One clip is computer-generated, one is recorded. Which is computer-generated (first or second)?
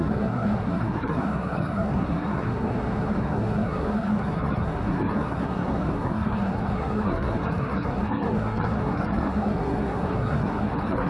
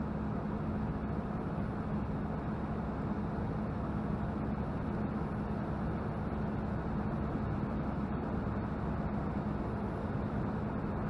first